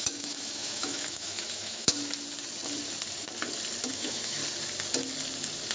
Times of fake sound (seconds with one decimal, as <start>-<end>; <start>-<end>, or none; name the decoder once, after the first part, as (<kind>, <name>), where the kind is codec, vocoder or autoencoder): 0.0-1.9 (autoencoder, DAC-VAE); 3.9-4.4